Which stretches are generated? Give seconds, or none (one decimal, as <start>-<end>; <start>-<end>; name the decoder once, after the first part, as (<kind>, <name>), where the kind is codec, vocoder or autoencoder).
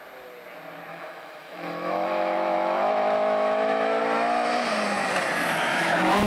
0.9-4.0 (autoencoder, DAC-VAE); 5.7-6.3